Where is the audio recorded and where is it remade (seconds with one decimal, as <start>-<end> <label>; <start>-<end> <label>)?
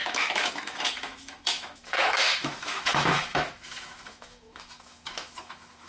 0.0-5.9 remade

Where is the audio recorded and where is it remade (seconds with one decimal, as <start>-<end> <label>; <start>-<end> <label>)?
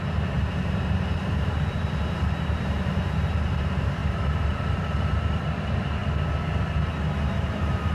0.0-6.0 remade; 6.0-7.3 recorded; 7.3-7.9 remade